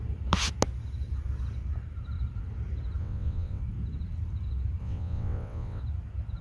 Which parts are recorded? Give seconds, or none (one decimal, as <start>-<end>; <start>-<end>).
0.0-3.0; 3.6-4.8; 5.8-6.4